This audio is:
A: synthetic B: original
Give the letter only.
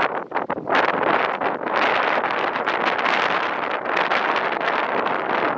B